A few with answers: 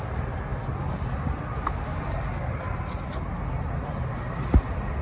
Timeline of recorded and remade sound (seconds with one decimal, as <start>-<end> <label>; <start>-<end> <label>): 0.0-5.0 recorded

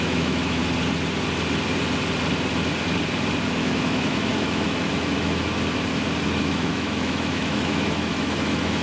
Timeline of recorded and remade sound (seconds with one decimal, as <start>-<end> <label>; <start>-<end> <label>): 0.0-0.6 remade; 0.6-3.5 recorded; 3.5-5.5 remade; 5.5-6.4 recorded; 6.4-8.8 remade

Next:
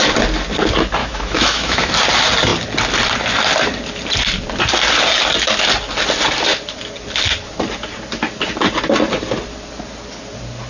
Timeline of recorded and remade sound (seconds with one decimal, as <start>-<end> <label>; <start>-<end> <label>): 0.0-1.0 recorded; 1.0-1.9 remade; 1.9-10.7 recorded

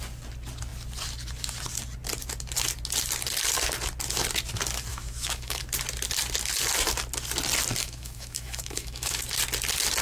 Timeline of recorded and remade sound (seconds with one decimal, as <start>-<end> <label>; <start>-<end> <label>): 0.0-4.9 recorded; 4.9-5.6 remade; 5.6-7.8 recorded; 7.8-9.2 remade; 9.2-10.0 recorded

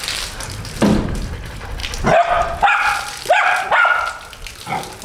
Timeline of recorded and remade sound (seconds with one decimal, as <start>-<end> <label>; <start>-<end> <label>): 0.0-5.0 recorded

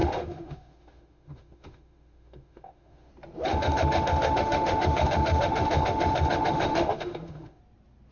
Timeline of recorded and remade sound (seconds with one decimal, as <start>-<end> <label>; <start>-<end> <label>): 0.0-3.1 remade; 3.1-3.5 recorded; 3.5-7.6 remade; 7.6-8.1 recorded